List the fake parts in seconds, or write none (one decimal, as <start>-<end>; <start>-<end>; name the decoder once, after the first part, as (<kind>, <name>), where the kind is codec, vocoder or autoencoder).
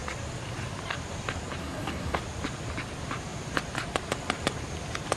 1.6-2.2 (codec, SNAC)